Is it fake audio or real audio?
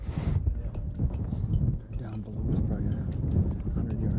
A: real